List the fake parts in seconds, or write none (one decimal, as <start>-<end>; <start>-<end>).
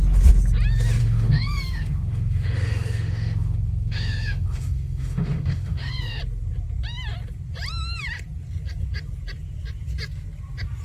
1.0-6.2